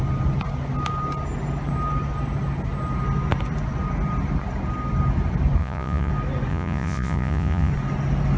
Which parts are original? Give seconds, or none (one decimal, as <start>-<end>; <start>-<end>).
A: 0.0-5.6; 6.1-6.5; 7.7-8.4

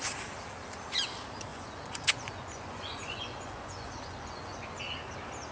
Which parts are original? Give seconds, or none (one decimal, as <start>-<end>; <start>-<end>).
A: 0.0-1.5; 4.8-5.5

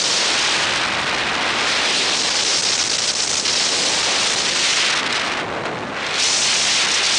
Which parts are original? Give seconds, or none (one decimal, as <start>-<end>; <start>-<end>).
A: 0.0-7.2

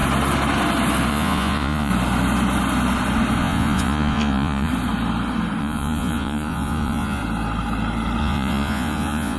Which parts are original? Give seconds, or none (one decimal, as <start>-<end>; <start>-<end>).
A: 0.0-1.1; 1.9-3.4; 4.7-5.6; 7.2-8.2

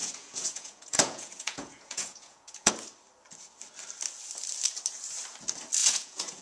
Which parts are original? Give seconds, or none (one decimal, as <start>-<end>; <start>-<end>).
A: 2.7-5.8